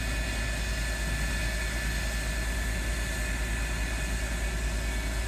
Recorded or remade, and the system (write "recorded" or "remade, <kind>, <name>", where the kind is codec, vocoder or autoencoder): recorded